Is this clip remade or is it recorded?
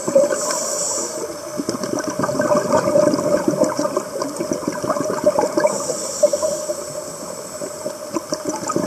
remade